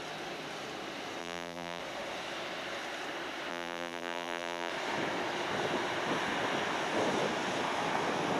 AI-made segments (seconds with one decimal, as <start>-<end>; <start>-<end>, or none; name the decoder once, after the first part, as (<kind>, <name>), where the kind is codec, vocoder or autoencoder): 1.2-1.8 (vocoder, BigVGAN v2); 3.5-4.7